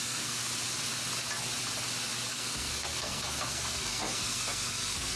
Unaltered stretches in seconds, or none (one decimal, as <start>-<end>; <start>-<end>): 0.4-2.3